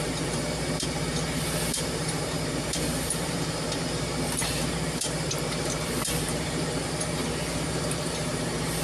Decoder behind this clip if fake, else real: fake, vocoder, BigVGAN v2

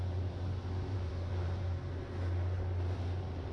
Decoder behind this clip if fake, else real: real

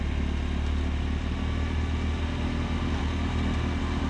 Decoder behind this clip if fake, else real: real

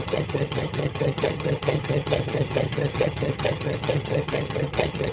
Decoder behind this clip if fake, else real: fake, vocoder, HiFi-GAN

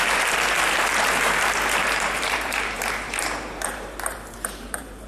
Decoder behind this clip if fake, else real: fake, vocoder, BigVGAN v2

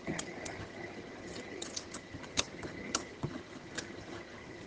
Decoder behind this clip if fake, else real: fake, vocoder, HiFi-GAN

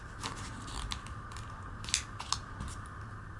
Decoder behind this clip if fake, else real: real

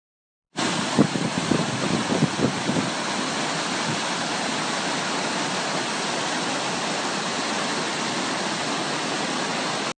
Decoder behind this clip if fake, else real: real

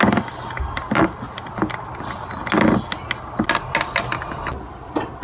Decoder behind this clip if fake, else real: real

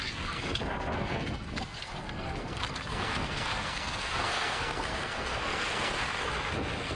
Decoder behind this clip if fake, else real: fake, codec, SNAC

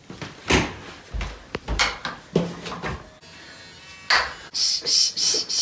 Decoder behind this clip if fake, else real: real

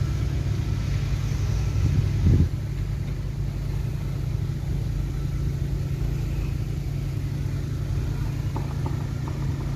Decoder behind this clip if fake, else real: real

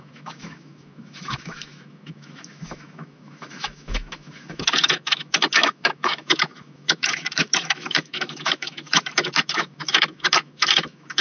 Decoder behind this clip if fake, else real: fake, autoencoder, DAC-VAE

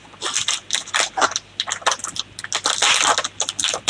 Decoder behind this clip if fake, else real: real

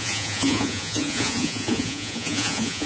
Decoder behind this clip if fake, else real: fake, vocoder, Vocos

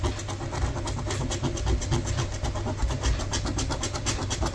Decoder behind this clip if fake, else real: real